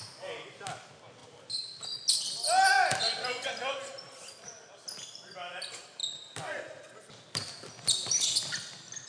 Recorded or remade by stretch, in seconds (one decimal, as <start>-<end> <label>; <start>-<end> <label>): 0.0-9.1 recorded